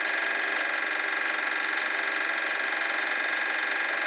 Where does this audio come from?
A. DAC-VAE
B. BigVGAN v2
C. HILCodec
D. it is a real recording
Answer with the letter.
D